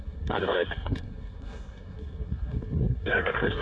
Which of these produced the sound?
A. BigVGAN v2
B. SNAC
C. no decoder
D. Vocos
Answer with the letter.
B